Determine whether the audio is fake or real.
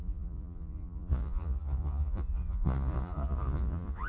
fake